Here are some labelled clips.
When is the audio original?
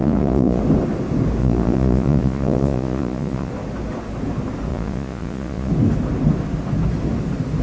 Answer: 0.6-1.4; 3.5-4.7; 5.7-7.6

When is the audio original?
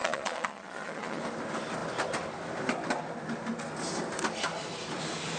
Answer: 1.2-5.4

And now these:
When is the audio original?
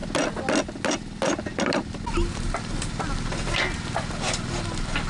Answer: 0.0-5.1